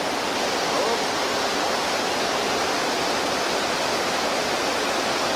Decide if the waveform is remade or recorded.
recorded